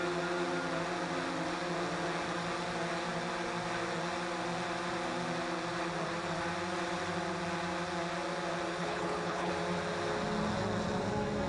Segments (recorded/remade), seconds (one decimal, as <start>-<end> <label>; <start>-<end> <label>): 0.0-8.8 recorded; 8.8-9.5 remade; 9.5-11.5 recorded